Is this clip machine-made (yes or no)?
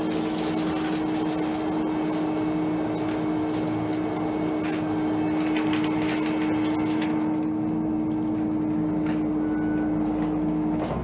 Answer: no